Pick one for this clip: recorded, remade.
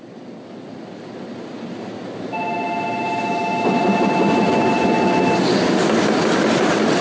recorded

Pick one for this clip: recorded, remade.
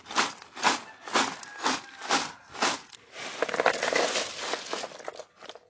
recorded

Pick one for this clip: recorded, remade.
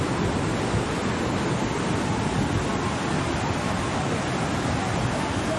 recorded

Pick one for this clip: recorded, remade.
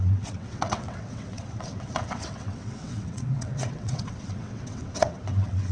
remade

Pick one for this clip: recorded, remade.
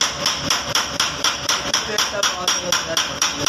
recorded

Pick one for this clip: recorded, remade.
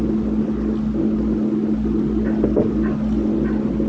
recorded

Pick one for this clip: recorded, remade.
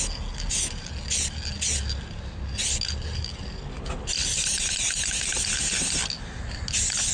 recorded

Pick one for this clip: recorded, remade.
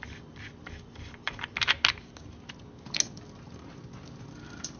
recorded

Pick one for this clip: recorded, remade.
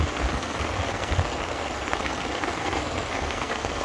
remade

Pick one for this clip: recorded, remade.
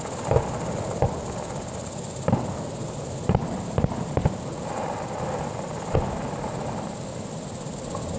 recorded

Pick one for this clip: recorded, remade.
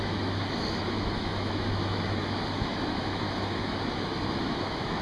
remade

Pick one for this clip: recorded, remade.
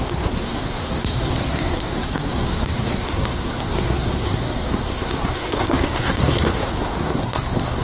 remade